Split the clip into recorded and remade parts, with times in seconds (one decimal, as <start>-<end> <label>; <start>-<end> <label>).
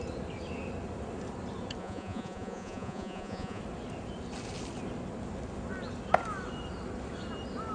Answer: 0.0-1.8 recorded; 1.8-3.6 remade; 3.6-7.7 recorded